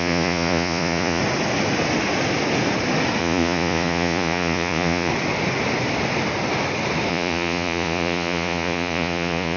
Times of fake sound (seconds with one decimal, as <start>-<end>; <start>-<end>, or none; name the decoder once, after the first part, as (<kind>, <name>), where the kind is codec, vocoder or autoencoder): 0.0-1.2 (vocoder, Vocos); 3.2-5.1; 7.1-9.6